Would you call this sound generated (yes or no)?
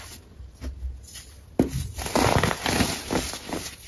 no